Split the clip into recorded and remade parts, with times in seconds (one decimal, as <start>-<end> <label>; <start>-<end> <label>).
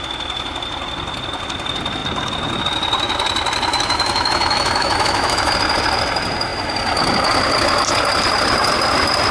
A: 0.0-3.7 recorded; 3.7-5.5 remade; 5.5-9.3 recorded